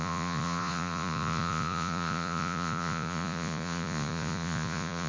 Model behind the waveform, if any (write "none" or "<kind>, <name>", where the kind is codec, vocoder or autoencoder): vocoder, Vocos